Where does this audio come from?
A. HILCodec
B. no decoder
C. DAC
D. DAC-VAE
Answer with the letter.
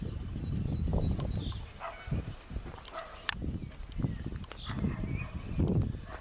B